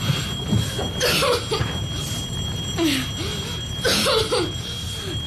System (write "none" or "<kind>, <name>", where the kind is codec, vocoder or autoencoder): none